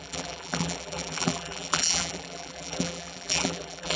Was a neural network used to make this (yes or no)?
yes